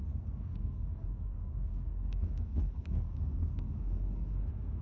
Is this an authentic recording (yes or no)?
no